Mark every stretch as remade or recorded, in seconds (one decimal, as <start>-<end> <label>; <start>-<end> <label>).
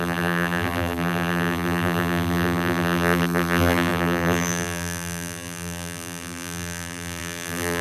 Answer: 0.0-7.8 remade